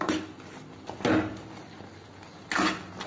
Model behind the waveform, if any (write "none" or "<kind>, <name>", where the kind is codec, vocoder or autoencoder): none